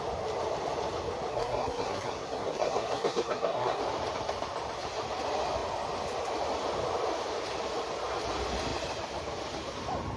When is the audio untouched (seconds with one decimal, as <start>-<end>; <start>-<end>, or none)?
0.0-1.3; 3.8-10.2